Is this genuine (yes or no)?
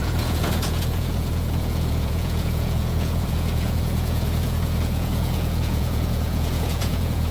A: no